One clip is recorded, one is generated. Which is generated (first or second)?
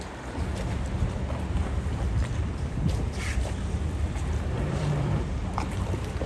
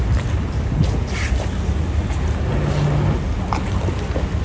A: first